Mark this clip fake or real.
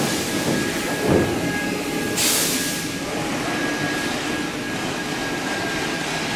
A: real